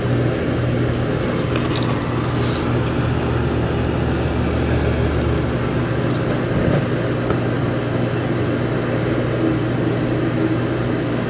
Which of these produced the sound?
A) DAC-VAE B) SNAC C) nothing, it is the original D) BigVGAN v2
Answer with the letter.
C